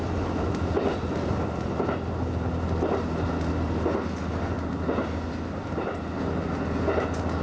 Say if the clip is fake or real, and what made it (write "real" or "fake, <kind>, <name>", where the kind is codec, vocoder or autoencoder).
real